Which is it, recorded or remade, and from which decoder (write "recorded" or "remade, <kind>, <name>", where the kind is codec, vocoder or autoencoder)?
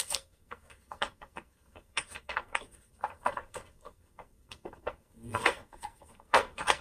remade, codec, SNAC